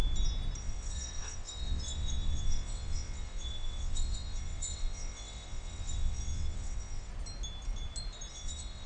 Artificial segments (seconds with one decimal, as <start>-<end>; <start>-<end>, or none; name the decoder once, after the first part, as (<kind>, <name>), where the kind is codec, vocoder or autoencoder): 0.6-7.1 (vocoder, WaveNeXt); 8.3-8.9